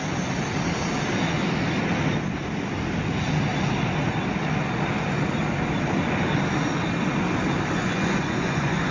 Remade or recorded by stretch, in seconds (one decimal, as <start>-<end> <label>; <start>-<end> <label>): 0.0-7.8 recorded; 7.8-8.9 remade